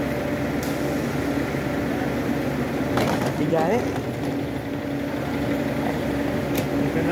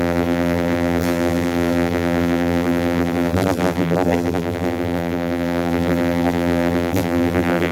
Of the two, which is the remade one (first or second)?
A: second